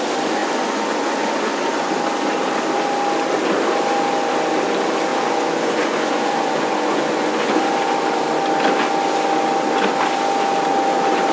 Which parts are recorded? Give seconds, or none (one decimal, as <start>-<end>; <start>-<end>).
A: 0.0-0.4; 1.9-5.1; 7.6-11.3